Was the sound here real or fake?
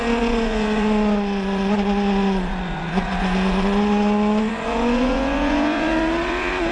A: fake